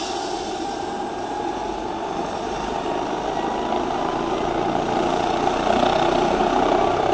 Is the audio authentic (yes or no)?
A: yes